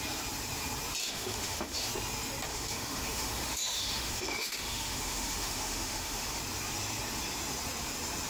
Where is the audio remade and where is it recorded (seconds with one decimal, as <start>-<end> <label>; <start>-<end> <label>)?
0.0-1.0 recorded; 1.0-1.9 remade; 1.9-2.5 recorded; 2.5-6.4 remade; 6.4-8.3 recorded